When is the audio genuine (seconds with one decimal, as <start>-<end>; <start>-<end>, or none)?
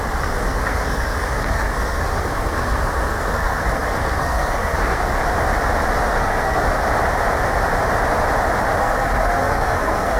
5.2-6.1; 6.6-8.8